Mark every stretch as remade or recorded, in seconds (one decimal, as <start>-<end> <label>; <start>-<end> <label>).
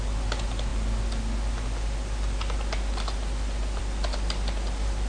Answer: 0.0-5.1 recorded